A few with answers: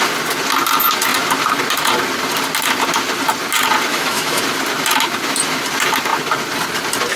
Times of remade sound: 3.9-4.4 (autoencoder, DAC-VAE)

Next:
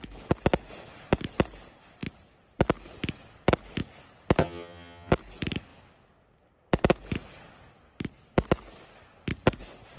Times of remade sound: 4.4-5.1 (vocoder, HiFi-GAN)

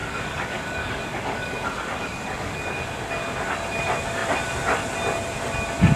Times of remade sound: 0.0-2.8 (codec, DAC)

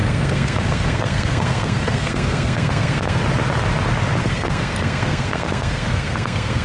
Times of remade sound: 0.0-3.2 (codec, SNAC); 4.2-6.6